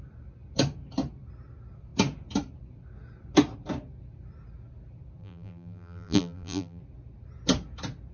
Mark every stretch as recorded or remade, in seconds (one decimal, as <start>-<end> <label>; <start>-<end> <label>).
0.0-5.2 recorded; 5.2-6.8 remade; 6.8-8.1 recorded